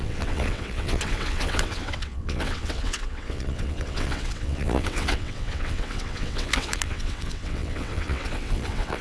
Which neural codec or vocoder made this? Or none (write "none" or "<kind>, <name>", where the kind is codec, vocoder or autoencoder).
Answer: vocoder, WaveNeXt